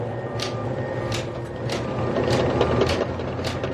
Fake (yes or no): no